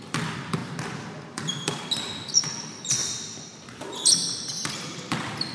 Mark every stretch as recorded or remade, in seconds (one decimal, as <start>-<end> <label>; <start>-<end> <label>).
0.0-0.6 remade; 0.6-1.3 recorded; 1.3-5.5 remade